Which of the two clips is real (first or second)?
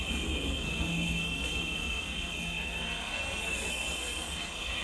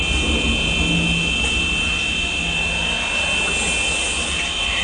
second